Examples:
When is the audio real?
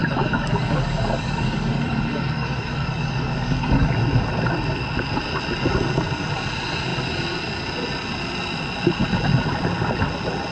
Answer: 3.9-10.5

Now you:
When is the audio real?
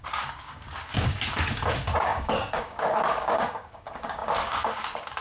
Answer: none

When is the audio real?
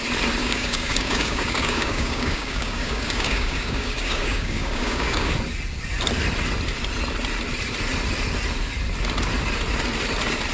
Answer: 0.0-0.4; 5.3-10.5